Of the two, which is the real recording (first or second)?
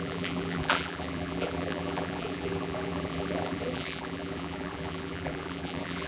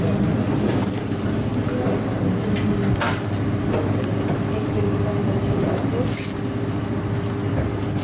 second